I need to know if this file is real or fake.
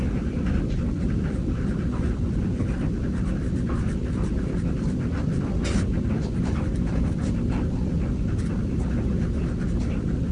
real